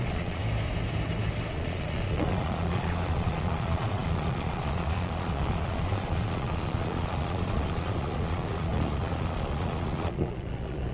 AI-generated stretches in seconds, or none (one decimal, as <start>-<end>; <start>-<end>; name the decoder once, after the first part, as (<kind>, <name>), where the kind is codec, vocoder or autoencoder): 0.0-0.4 (vocoder, Vocos); 1.5-10.9